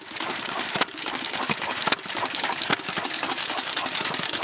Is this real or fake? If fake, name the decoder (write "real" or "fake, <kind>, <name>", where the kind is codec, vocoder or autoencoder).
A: fake, codec, DAC